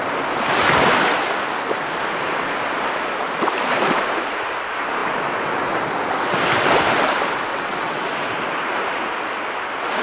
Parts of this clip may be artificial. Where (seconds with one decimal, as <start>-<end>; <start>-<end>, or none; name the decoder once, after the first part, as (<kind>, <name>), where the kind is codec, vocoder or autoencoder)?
7.5-8.1 (vocoder, WaveNeXt)